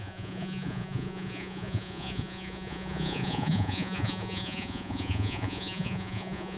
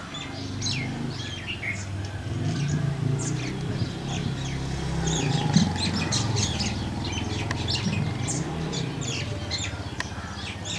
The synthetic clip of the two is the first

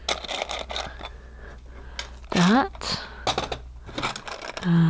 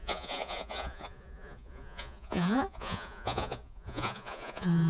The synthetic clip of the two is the second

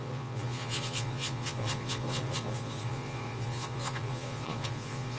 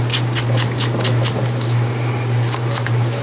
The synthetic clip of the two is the first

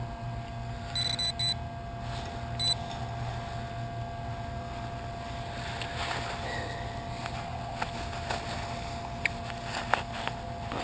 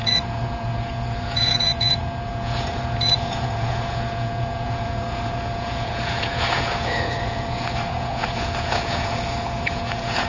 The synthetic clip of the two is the second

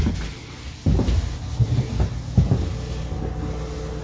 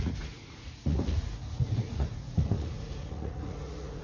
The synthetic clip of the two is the second